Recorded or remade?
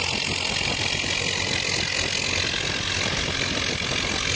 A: recorded